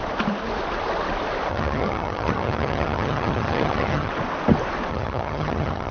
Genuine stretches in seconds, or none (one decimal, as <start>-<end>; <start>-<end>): 0.0-1.5; 4.1-4.9